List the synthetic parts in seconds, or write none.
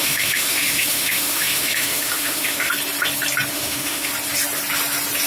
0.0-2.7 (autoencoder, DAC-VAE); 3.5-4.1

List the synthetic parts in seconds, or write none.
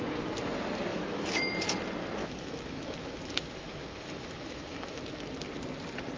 0.9-1.5 (autoencoder, DAC-VAE); 2.2-5.0